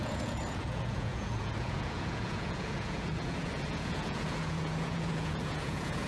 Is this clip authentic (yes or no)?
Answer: no